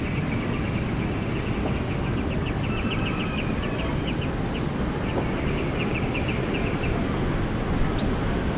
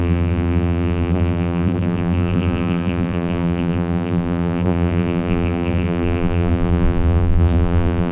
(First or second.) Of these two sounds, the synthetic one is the second